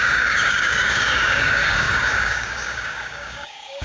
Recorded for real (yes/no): no